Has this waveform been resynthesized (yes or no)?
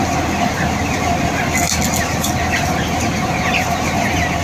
no